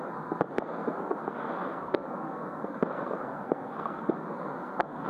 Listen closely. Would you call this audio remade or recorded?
remade